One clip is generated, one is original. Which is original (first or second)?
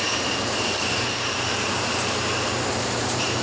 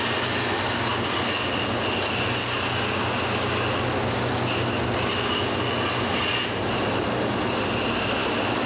second